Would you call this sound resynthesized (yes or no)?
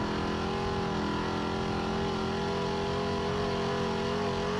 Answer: no